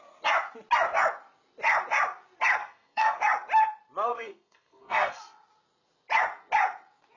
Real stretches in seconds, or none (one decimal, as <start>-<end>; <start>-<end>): 0.0-2.6; 3.2-4.1; 5.2-7.2